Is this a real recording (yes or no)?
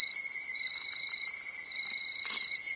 yes